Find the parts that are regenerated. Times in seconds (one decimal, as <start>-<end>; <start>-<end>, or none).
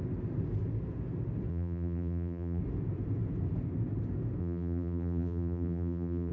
1.5-2.6; 4.4-6.3